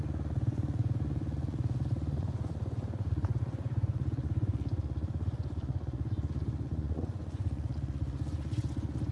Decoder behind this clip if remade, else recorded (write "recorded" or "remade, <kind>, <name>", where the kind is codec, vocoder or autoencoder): remade, vocoder, Vocos